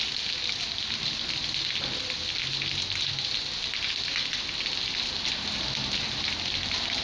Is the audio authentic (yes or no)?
yes